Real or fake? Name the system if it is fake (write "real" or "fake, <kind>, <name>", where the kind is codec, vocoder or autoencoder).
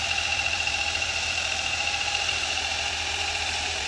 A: fake, vocoder, BigVGAN v2